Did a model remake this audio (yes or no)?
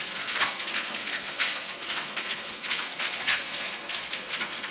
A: yes